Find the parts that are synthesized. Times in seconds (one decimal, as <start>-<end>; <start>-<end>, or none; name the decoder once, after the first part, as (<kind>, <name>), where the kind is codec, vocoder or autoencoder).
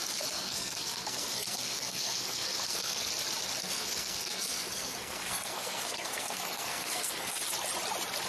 0.0-3.1 (codec, SNAC); 3.6-7.4